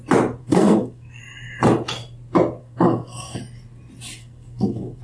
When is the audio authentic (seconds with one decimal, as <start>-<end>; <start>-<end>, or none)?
0.0-0.4; 1.2-2.6; 3.4-4.2